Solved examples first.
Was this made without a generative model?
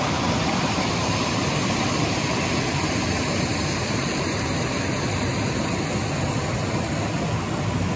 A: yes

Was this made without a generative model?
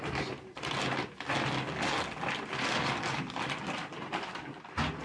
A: yes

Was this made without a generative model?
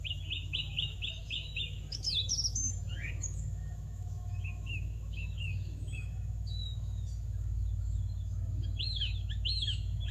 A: no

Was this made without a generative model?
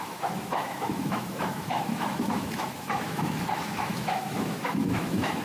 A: no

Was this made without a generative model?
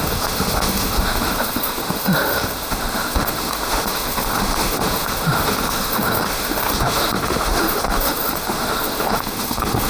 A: no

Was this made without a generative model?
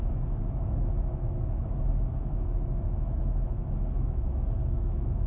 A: no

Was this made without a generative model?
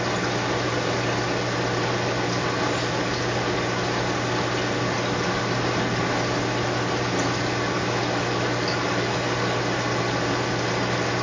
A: yes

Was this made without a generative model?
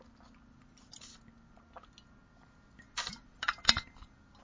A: yes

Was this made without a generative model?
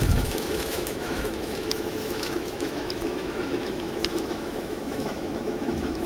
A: no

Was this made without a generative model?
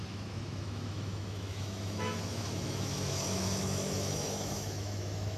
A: no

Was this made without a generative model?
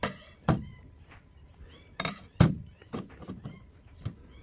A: yes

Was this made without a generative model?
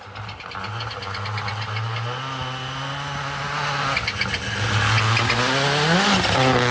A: yes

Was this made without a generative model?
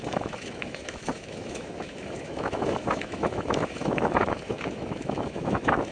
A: no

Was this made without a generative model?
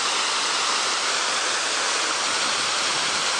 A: yes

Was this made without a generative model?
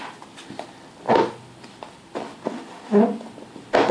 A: yes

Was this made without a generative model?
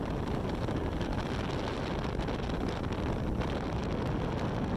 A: yes